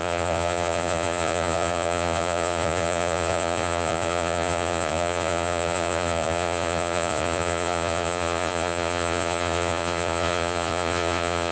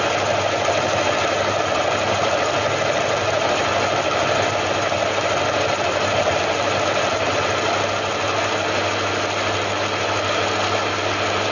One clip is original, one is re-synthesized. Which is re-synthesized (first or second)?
first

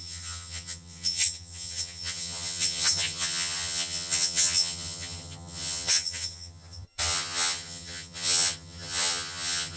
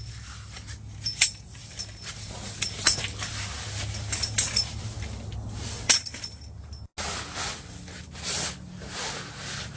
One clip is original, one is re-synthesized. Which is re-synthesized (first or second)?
first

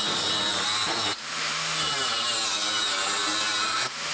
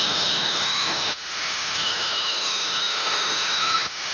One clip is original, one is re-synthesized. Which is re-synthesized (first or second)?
second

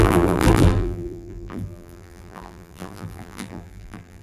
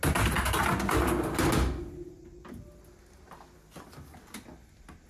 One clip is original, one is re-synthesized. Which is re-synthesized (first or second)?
first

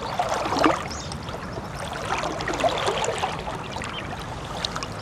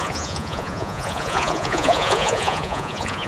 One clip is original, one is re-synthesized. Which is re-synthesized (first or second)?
second